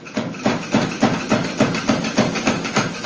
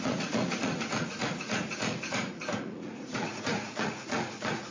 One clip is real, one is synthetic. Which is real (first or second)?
first